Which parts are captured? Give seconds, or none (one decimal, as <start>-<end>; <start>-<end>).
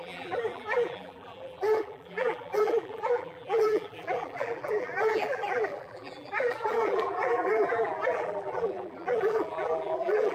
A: none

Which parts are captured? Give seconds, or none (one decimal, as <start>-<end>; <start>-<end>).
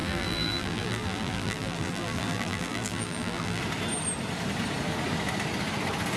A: 3.6-6.2